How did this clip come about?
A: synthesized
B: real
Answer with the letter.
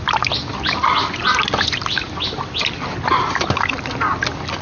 B